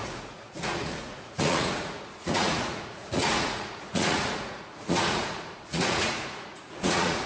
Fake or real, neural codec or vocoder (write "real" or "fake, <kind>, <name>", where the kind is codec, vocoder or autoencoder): fake, vocoder, Vocos